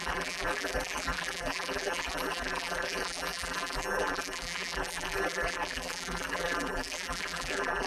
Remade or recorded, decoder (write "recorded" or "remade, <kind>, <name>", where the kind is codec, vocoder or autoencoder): remade, vocoder, BigVGAN v2